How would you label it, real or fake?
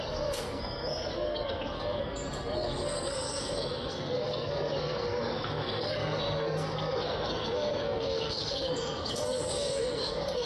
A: fake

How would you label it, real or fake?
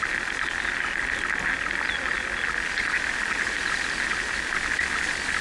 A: real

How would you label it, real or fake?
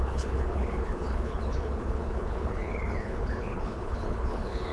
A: fake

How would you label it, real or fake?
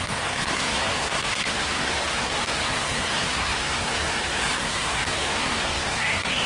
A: fake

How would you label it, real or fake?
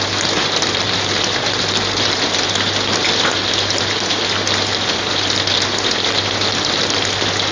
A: real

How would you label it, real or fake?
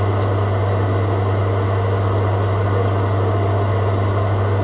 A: real